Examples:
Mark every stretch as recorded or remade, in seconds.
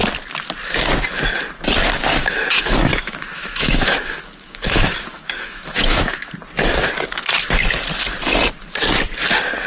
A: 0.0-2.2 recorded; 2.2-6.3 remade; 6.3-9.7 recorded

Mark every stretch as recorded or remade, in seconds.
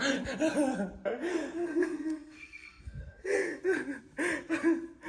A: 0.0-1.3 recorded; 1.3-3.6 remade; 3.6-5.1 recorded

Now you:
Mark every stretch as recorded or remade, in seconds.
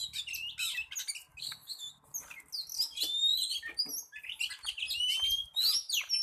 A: 0.0-1.3 recorded; 1.3-1.9 remade; 1.9-6.2 recorded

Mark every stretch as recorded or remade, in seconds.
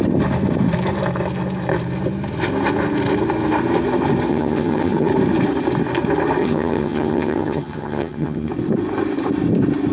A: 0.0-4.3 recorded; 4.3-5.1 remade; 5.1-6.4 recorded; 6.4-8.5 remade; 8.5-9.9 recorded